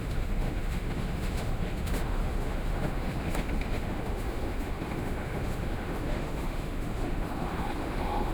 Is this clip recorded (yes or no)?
no